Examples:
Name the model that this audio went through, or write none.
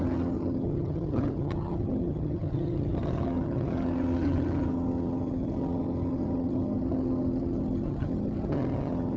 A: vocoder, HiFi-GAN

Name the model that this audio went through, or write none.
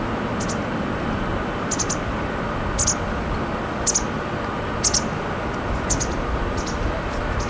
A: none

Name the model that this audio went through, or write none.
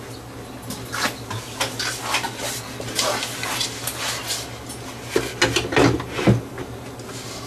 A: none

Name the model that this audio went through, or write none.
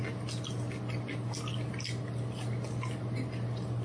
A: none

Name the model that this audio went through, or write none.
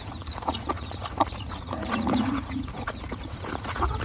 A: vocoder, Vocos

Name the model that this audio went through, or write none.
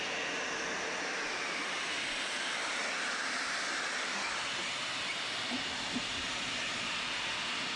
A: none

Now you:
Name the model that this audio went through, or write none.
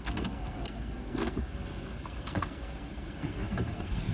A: codec, SNAC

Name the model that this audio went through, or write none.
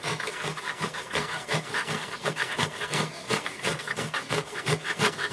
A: codec, SNAC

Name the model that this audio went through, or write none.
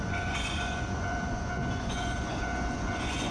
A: vocoder, Vocos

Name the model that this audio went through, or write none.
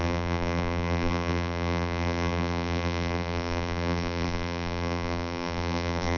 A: vocoder, BigVGAN v2